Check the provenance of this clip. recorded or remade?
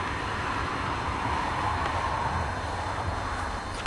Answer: recorded